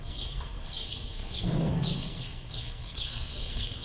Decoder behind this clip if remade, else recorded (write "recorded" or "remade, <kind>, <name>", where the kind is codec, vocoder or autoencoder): remade, codec, SNAC